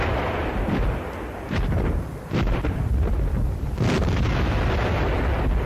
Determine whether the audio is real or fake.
real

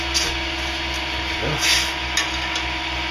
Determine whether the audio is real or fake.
real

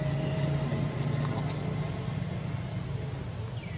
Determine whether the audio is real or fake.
real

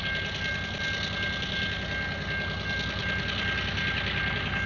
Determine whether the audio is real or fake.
real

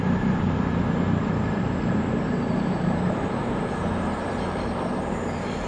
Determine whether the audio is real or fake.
fake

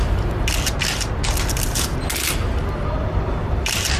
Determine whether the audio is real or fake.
real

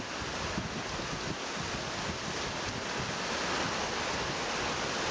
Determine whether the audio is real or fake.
real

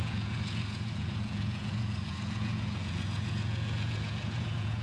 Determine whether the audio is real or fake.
fake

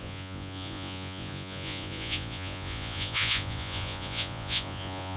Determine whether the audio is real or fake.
fake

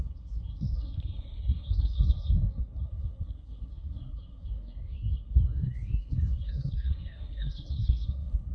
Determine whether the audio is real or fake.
fake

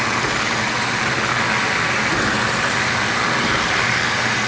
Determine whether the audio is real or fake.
real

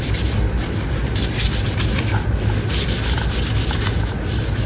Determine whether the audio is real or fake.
real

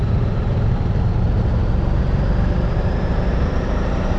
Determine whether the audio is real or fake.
fake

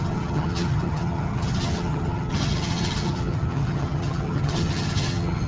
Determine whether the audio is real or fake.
fake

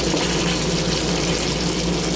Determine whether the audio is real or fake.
real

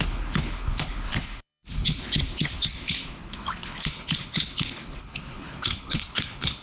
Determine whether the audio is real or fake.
fake